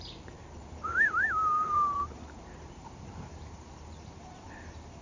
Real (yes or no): no